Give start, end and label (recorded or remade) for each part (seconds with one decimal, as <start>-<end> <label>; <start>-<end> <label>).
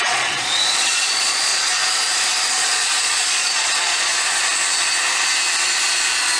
0.0-1.5 remade; 1.5-2.5 recorded; 2.5-4.1 remade; 4.1-6.4 recorded